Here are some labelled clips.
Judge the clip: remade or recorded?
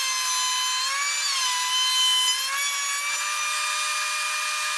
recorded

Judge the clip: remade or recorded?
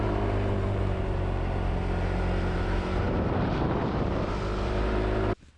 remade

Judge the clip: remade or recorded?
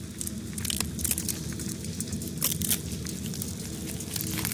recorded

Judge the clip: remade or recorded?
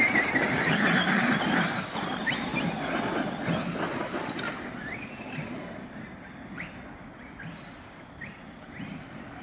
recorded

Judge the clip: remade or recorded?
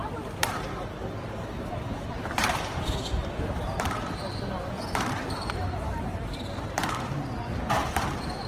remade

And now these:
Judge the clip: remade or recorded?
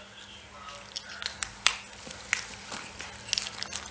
recorded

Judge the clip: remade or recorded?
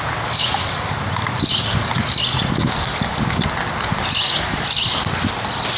recorded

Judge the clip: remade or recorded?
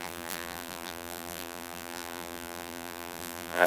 remade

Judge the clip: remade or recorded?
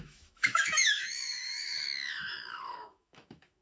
remade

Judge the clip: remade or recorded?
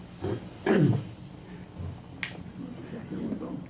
recorded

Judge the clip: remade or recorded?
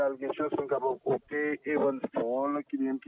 recorded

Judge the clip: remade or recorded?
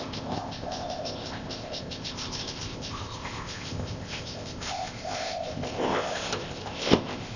remade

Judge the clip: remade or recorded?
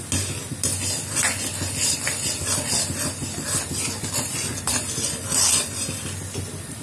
recorded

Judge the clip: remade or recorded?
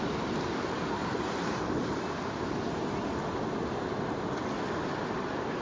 recorded